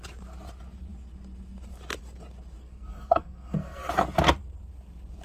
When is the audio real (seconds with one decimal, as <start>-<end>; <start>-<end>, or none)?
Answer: 0.0-2.6; 3.9-5.2